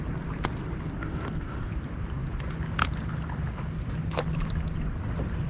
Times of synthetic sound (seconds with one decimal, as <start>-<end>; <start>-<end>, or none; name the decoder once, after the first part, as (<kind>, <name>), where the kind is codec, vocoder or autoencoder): 1.0-1.7 (codec, DAC)